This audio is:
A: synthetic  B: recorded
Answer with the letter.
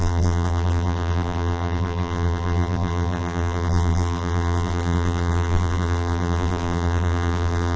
A